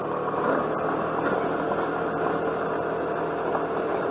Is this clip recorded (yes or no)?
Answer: yes